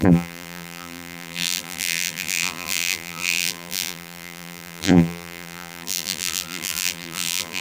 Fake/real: fake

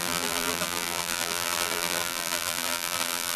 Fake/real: fake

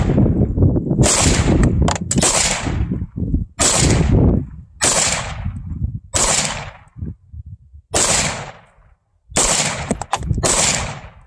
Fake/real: real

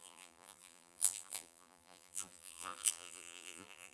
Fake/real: fake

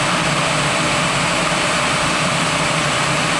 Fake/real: fake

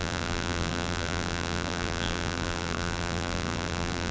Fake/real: fake